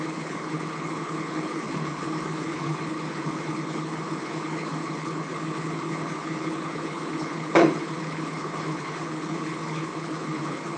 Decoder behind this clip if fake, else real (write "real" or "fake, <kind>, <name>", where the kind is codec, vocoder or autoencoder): fake, codec, HILCodec